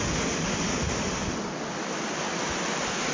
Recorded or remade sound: recorded